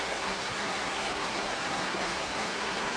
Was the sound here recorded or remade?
remade